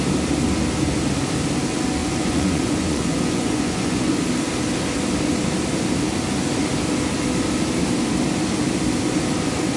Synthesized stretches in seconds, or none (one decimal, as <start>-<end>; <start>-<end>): 2.0-4.1